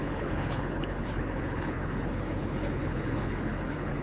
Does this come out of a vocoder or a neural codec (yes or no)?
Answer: yes